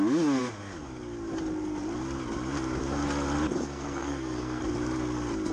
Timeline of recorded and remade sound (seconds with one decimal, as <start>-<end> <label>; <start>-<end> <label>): 0.0-3.5 recorded; 3.5-4.6 remade; 4.6-5.5 recorded